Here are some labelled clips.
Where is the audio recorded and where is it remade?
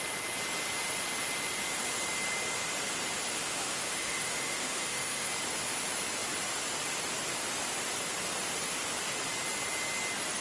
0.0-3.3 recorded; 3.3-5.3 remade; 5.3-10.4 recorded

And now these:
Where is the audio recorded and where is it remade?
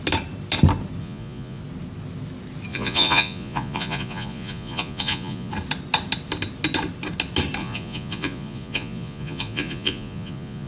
0.0-1.0 recorded; 1.0-1.6 remade; 1.6-2.7 recorded; 2.7-5.5 remade; 5.5-7.6 recorded; 7.6-10.7 remade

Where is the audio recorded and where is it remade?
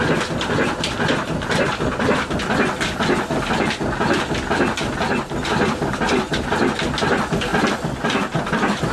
0.0-8.9 recorded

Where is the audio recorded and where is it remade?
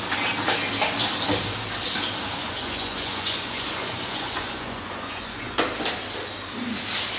0.0-2.4 recorded; 2.4-5.6 remade; 5.6-7.2 recorded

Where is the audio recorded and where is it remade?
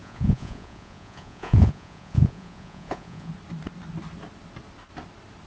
0.0-3.3 remade; 3.3-5.5 recorded